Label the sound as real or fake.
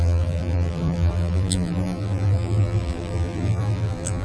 fake